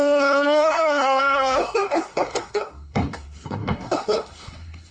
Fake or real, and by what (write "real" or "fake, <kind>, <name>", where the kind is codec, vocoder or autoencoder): fake, codec, SNAC